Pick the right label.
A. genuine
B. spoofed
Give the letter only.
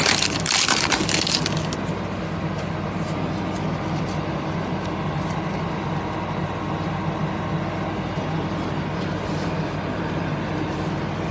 A